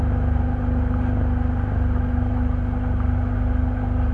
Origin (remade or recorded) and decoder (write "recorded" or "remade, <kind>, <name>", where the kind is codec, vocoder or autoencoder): recorded